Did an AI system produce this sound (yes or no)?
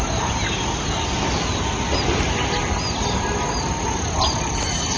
no